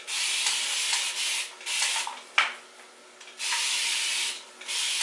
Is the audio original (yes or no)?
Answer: yes